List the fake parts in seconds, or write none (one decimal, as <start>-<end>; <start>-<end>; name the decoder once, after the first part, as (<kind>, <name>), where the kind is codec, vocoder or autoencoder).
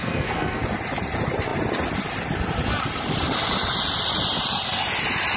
0.0-0.6 (codec, SNAC)